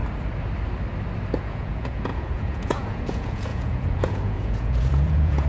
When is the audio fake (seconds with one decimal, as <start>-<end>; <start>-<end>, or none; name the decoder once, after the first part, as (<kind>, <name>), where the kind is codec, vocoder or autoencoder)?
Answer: 1.4-5.5 (vocoder, Vocos)